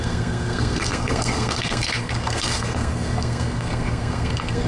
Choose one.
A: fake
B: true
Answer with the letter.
A